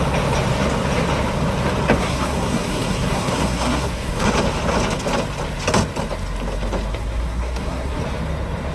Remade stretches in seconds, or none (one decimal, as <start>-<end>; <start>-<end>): 2.0-4.3; 6.9-8.0